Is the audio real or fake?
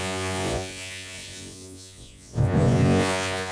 fake